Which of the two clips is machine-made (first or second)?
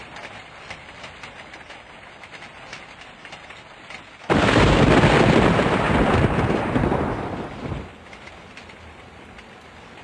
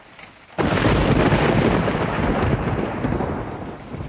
first